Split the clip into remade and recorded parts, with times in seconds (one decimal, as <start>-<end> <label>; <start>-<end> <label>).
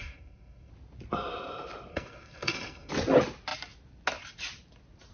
0.0-0.7 remade; 0.7-1.9 recorded; 1.9-2.9 remade; 2.9-5.1 recorded